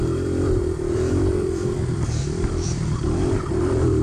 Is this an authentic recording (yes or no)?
no